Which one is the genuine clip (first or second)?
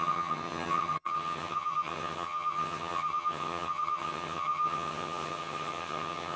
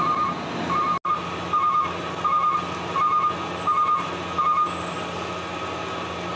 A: second